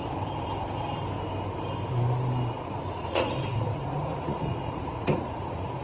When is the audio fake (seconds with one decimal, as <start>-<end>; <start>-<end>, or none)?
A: 2.8-5.8